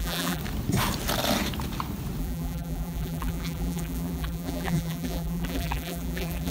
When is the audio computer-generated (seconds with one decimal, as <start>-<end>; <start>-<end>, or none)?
0.0-0.4; 2.2-6.5